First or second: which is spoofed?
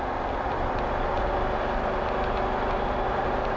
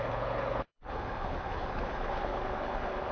second